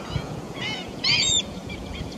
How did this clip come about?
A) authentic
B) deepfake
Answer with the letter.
B